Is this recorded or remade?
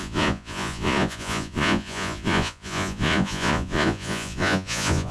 remade